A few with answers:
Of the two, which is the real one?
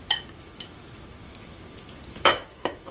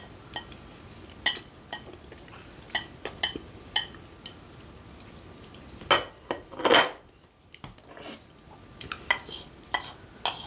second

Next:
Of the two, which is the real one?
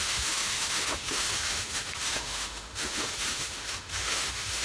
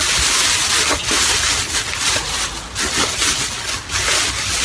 second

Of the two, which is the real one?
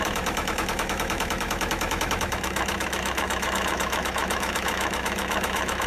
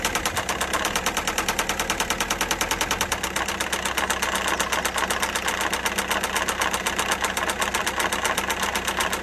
second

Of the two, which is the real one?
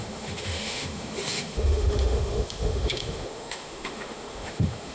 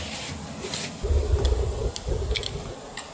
second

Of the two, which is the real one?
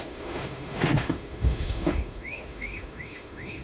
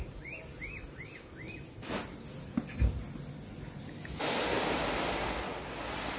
second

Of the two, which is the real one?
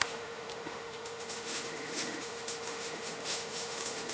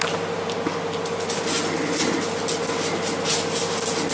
second